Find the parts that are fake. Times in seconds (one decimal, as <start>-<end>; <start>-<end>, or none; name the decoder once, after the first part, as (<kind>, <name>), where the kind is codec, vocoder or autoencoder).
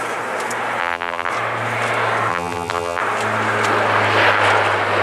0.8-1.3 (vocoder, BigVGAN v2); 2.3-3.0